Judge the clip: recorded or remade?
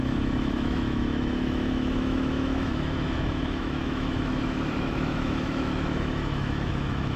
remade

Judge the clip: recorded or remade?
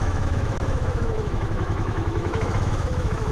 remade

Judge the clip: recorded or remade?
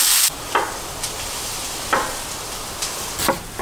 recorded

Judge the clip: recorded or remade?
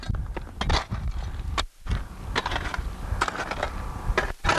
recorded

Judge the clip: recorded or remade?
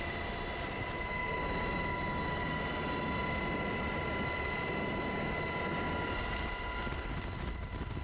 recorded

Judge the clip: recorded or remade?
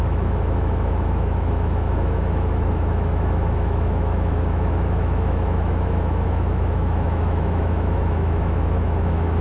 remade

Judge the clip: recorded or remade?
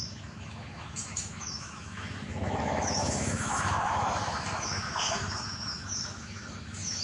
remade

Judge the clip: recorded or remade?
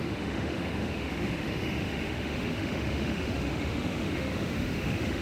remade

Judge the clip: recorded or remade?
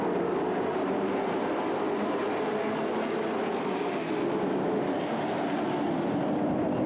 recorded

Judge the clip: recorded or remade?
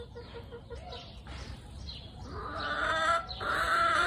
recorded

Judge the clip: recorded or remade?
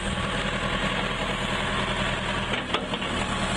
recorded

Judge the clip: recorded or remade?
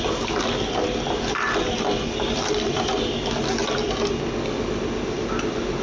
recorded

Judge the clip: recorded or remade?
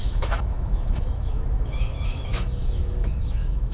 remade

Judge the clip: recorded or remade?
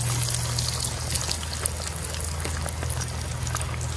recorded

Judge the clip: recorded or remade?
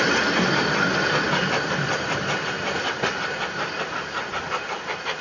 recorded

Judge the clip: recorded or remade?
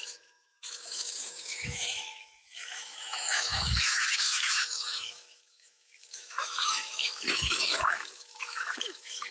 remade